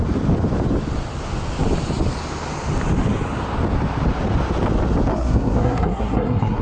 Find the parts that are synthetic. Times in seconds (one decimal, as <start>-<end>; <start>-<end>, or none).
5.1-6.6